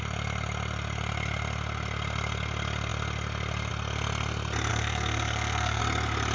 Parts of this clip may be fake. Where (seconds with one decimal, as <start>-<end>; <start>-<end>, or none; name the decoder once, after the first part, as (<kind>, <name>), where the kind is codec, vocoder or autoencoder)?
4.7-5.8 (codec, SNAC)